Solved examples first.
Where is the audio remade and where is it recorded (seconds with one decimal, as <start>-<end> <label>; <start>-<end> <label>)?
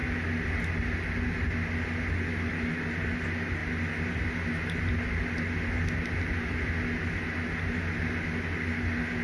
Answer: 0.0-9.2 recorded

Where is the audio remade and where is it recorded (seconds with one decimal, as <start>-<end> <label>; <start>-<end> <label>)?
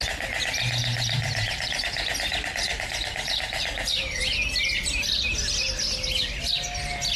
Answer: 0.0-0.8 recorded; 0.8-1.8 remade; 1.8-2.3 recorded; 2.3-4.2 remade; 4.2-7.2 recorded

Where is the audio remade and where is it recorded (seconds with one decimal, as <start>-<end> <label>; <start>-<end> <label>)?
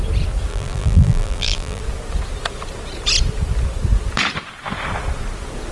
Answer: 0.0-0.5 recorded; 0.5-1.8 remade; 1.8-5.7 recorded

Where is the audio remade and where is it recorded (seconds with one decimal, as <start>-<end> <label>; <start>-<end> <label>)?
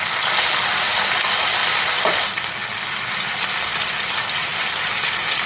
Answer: 0.0-5.5 recorded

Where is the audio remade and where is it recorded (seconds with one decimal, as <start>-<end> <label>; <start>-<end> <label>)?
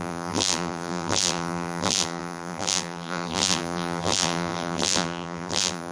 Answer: 0.0-5.9 remade